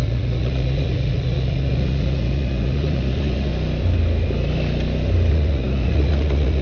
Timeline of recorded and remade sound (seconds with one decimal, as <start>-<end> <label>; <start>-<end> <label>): 0.0-3.5 remade; 3.5-5.3 recorded; 5.3-6.6 remade